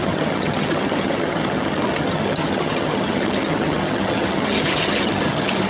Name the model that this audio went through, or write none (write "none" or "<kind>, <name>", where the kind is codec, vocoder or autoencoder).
vocoder, HiFi-GAN